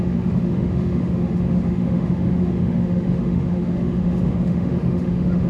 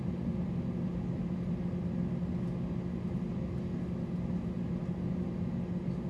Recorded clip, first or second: second